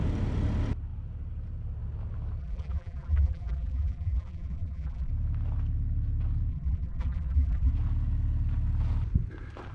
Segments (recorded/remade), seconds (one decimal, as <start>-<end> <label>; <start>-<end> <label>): 0.0-2.4 recorded; 2.4-5.1 remade; 5.1-6.5 recorded; 6.5-7.7 remade; 7.7-9.7 recorded

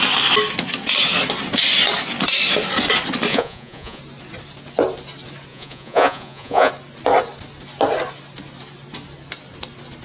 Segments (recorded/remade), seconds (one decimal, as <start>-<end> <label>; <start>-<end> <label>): 0.0-3.3 recorded; 3.3-4.0 remade; 4.0-5.5 recorded; 5.5-6.7 remade; 6.7-10.0 recorded

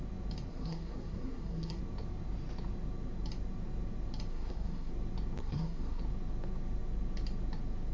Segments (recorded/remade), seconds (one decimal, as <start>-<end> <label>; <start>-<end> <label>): 0.0-0.5 recorded; 0.5-1.8 remade; 1.8-4.3 recorded; 4.3-4.9 remade; 4.9-5.4 recorded; 5.4-6.0 remade; 6.0-7.9 recorded

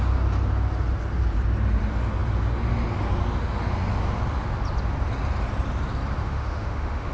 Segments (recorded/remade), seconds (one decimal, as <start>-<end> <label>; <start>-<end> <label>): 0.0-6.2 recorded; 6.2-7.1 remade